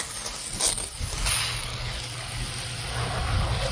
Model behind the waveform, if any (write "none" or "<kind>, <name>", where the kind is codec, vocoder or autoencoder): none